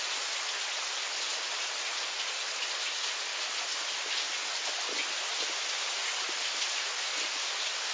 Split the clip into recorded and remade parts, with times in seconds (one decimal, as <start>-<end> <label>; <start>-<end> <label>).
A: 0.0-7.9 recorded